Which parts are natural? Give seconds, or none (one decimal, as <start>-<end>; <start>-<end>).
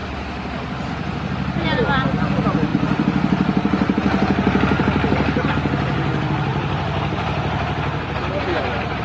0.0-2.7; 5.5-6.5